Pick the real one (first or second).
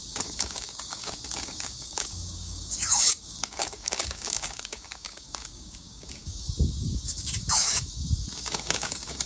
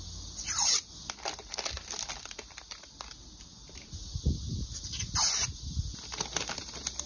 second